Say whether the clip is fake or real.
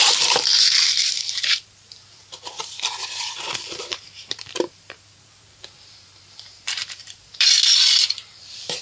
fake